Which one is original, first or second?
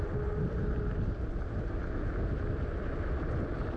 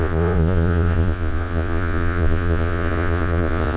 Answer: first